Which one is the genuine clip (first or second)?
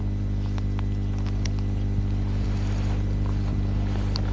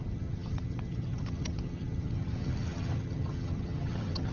first